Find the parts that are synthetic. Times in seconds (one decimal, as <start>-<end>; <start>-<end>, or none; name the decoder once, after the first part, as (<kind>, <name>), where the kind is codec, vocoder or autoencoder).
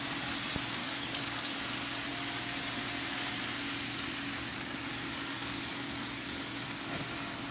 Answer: 0.8-1.6 (codec, DAC); 4.5-7.0